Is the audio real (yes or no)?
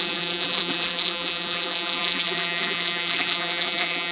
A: no